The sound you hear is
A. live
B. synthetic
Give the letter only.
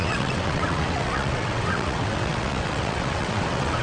B